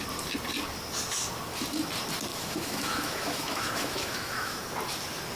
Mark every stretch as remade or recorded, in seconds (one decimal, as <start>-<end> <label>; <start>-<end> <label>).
0.0-2.3 recorded; 2.3-4.6 remade; 4.6-5.4 recorded